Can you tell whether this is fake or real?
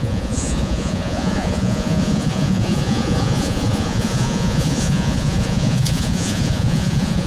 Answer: fake